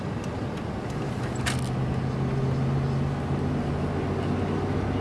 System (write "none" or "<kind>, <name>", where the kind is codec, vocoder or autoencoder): none